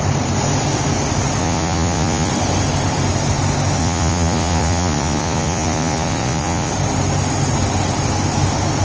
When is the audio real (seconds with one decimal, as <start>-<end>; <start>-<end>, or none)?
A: 0.0-1.4; 2.3-3.8; 6.7-8.8